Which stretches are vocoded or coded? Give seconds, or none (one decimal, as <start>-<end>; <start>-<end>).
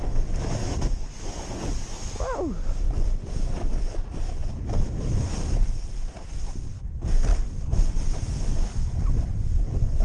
none